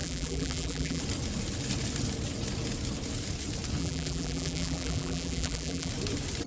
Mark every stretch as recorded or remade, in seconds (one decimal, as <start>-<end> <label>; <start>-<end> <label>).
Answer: 0.0-1.0 remade; 1.0-3.8 recorded; 3.8-5.9 remade; 5.9-6.5 recorded